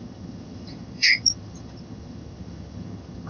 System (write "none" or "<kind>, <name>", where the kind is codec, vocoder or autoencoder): vocoder, HiFi-GAN